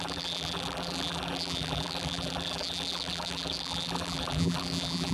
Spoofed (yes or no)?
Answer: yes